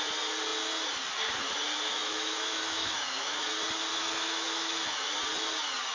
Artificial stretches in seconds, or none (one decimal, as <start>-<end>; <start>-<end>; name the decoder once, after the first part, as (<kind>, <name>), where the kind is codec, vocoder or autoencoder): 1.9-3.5 (autoencoder, DAC-VAE); 3.9-5.0